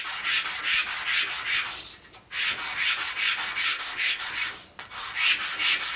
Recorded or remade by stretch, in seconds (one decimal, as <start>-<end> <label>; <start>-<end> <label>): 0.0-3.7 recorded; 3.7-4.2 remade; 4.2-6.0 recorded